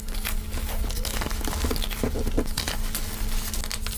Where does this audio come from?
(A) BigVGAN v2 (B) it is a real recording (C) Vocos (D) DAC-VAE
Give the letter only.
B